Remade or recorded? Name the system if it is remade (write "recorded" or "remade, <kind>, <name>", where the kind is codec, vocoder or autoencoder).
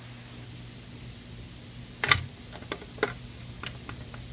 recorded